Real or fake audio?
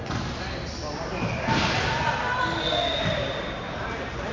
real